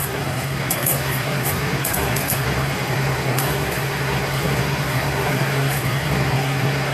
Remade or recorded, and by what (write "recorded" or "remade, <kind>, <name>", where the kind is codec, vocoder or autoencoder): remade, codec, SNAC